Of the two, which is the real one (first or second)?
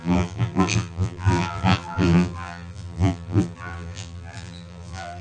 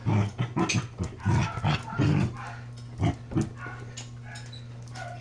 second